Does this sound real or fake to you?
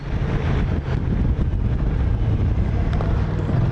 fake